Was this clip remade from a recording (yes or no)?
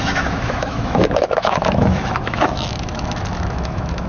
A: yes